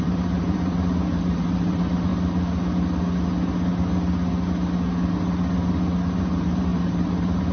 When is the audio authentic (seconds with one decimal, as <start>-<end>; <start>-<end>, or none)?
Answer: 2.1-6.2